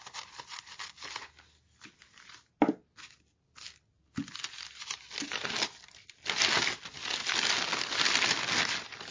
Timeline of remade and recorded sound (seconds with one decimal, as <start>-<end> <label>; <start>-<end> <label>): 0.0-9.1 recorded